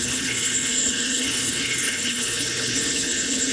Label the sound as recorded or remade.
remade